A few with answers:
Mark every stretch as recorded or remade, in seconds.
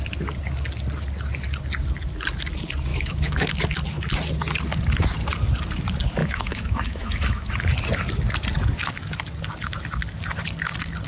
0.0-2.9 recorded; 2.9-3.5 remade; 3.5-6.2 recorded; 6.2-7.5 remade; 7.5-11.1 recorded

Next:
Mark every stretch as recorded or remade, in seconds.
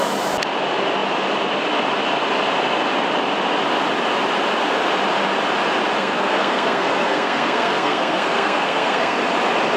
0.0-6.0 recorded; 6.0-9.2 remade; 9.2-9.8 recorded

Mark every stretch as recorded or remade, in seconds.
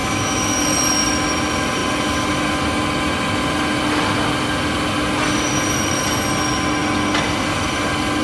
0.0-0.6 remade; 0.6-8.2 recorded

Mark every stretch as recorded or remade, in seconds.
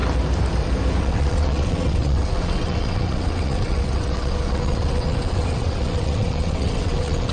0.0-1.0 recorded; 1.0-7.3 remade